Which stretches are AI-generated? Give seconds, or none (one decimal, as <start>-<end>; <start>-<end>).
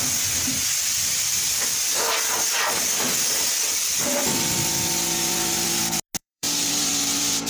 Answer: 6.2-7.5